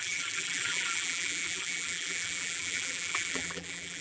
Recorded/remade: remade